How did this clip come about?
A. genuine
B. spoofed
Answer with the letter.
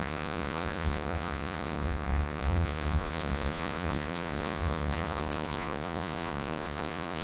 B